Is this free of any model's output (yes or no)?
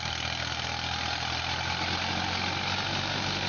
yes